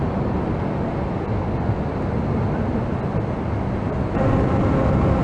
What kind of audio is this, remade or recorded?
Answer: recorded